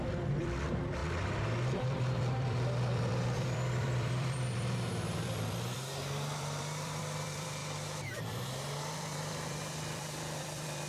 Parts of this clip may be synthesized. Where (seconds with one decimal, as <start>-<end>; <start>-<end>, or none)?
0.0-1.0; 1.8-7.6; 8.2-10.9